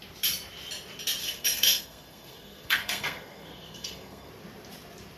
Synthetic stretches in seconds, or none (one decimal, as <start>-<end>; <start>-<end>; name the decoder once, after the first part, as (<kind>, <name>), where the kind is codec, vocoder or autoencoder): 1.2-4.3 (codec, SNAC)